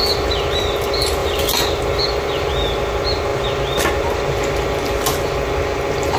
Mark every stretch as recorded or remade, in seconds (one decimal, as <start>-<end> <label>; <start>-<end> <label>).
0.0-1.2 recorded; 1.2-2.0 remade; 2.0-6.2 recorded

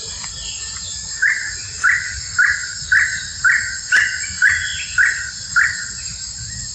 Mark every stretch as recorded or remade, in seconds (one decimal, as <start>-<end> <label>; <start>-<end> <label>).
0.0-6.7 recorded

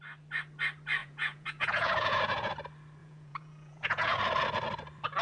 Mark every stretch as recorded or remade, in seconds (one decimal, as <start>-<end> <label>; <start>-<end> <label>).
0.0-1.0 recorded; 1.0-2.5 remade; 2.5-3.0 recorded; 3.0-4.2 remade; 4.2-5.2 recorded

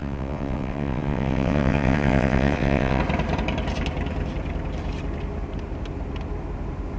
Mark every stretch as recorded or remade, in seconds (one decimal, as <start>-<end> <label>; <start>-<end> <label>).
0.0-3.0 remade; 3.0-7.0 recorded

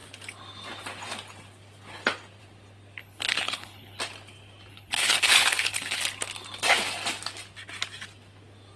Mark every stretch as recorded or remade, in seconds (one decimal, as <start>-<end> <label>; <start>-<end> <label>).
0.0-3.0 recorded; 3.0-4.0 remade; 4.0-4.7 recorded; 4.7-6.0 remade; 6.0-8.8 recorded

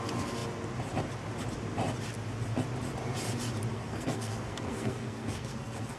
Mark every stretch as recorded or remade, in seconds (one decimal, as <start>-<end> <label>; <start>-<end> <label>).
0.0-3.7 recorded; 3.7-6.0 remade

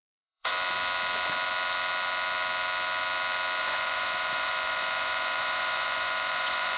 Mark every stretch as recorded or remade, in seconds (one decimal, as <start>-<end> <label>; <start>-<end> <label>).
0.0-0.5 remade; 0.5-3.6 recorded; 3.6-6.8 remade

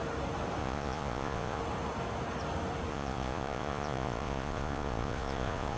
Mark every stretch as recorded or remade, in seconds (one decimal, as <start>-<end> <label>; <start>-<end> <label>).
0.0-0.6 recorded; 0.6-1.6 remade; 1.6-2.9 recorded; 2.9-5.8 remade